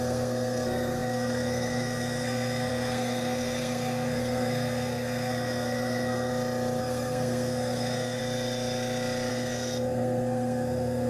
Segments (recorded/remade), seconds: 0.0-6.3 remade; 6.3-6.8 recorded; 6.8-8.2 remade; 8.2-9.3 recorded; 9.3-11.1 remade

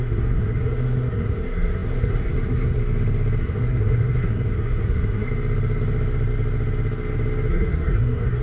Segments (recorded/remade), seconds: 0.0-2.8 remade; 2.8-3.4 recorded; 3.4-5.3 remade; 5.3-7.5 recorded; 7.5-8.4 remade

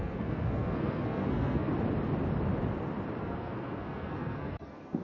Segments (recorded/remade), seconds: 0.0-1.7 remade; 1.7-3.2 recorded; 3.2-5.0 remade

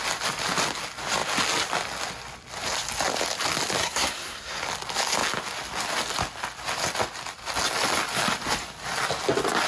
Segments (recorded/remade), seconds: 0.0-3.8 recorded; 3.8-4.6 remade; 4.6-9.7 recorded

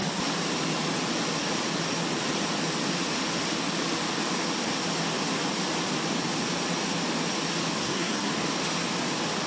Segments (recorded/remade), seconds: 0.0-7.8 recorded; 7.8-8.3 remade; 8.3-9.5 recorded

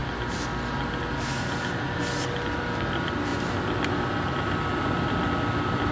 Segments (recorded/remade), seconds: 0.0-5.9 recorded